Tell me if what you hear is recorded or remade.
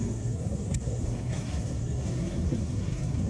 remade